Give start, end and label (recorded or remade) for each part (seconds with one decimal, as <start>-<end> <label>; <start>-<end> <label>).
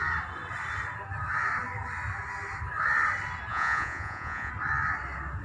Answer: 0.0-3.5 recorded; 3.5-4.5 remade; 4.5-5.4 recorded